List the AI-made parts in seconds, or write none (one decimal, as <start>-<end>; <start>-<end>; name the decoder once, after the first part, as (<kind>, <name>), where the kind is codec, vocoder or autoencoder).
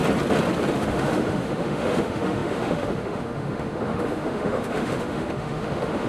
0.7-6.1 (autoencoder, DAC-VAE)